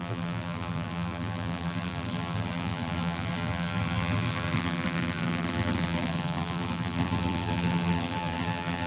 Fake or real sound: fake